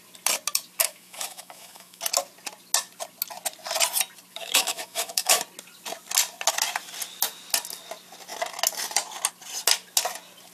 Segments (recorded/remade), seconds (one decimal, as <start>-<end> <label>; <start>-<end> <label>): 0.0-0.8 recorded; 0.8-2.0 remade; 2.0-4.3 recorded; 4.3-5.4 remade; 5.4-10.5 recorded